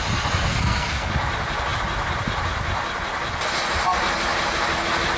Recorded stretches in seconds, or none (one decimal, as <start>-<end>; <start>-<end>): 0.0-0.5; 1.1-5.2